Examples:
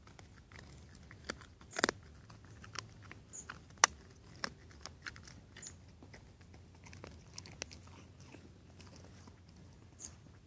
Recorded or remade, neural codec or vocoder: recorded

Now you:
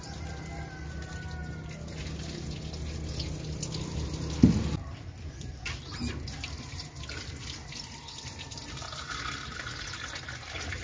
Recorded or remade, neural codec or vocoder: recorded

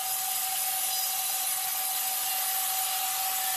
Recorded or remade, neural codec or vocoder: recorded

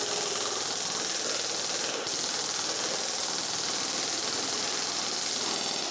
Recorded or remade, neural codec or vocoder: recorded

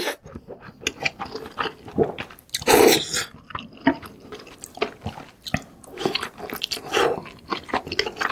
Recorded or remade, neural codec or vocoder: recorded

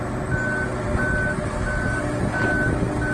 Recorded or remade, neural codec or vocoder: recorded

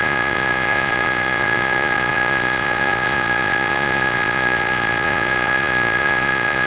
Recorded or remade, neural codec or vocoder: remade, vocoder, Vocos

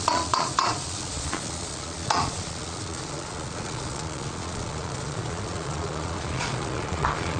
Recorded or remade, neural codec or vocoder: remade, vocoder, Vocos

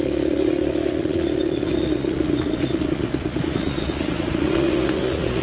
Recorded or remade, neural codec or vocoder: remade, vocoder, Vocos